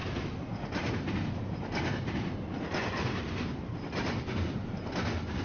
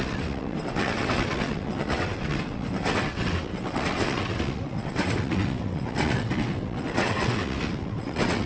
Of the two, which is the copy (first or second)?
second